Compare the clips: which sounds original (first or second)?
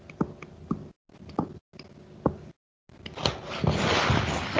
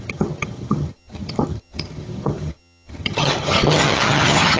first